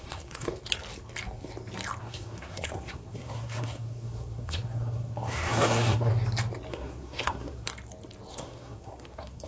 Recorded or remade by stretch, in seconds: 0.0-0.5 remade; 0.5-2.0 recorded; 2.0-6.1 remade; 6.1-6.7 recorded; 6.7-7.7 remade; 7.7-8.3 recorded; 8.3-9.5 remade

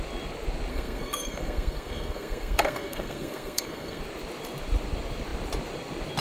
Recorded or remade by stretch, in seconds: 0.0-0.7 recorded; 0.7-4.0 remade; 4.0-6.2 recorded

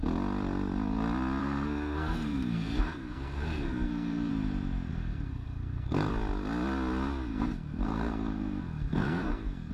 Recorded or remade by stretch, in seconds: 0.0-1.4 recorded; 1.4-4.3 remade; 4.3-4.9 recorded; 4.9-6.1 remade; 6.1-7.3 recorded; 7.3-9.7 remade

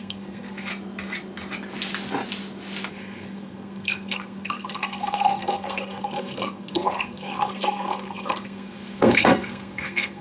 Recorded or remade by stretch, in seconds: 0.0-0.7 remade; 0.7-2.9 recorded; 2.9-10.2 remade

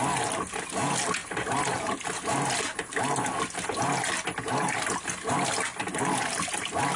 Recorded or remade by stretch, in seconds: 0.0-7.0 recorded

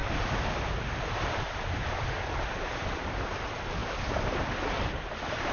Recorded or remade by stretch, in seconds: 0.0-5.5 recorded

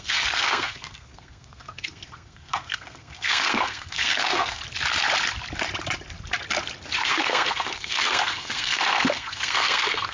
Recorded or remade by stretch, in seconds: 0.0-4.6 remade; 4.6-7.0 recorded; 7.0-10.1 remade